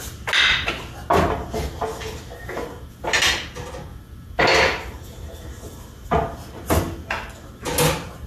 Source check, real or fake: real